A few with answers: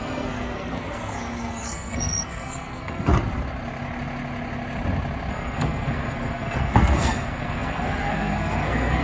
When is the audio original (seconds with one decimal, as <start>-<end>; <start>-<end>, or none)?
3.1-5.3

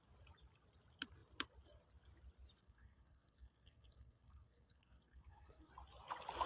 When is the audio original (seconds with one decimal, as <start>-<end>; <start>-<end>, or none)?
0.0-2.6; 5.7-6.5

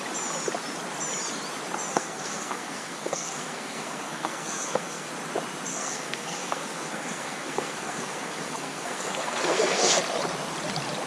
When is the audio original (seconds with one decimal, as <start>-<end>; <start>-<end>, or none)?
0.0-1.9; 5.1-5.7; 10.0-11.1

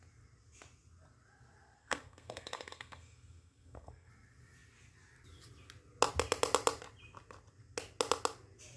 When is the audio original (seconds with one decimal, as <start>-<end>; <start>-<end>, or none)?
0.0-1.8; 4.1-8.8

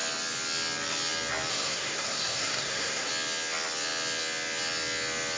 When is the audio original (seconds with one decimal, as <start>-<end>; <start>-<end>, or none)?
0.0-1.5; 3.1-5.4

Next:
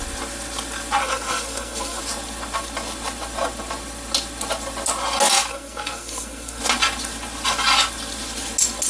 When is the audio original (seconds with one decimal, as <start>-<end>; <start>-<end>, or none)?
0.0-1.0; 2.0-5.5; 6.6-8.9

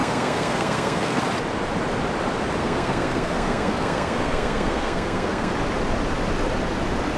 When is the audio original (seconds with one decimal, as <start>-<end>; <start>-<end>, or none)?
1.2-2.6; 5.5-7.2